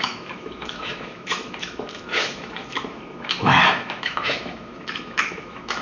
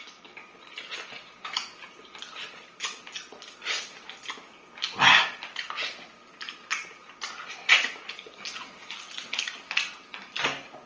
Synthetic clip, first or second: first